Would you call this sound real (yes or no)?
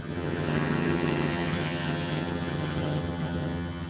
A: no